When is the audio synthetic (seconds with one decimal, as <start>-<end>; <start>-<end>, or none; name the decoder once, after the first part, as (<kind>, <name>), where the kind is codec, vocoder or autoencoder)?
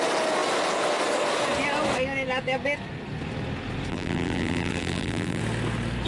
3.9-5.4 (vocoder, BigVGAN v2)